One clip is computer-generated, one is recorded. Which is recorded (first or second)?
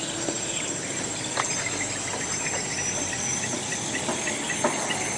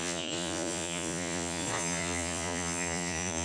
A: first